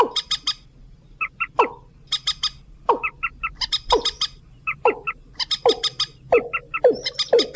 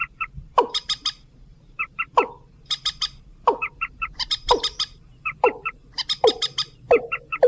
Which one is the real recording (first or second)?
first